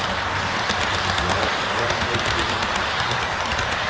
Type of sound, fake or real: real